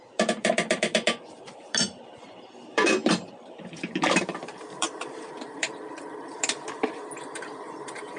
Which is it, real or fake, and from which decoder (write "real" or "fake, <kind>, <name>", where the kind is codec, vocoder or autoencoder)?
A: fake, vocoder, BigVGAN v2